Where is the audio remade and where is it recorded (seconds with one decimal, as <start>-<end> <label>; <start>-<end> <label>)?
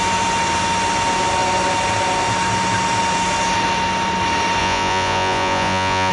0.0-4.6 recorded; 4.6-6.1 remade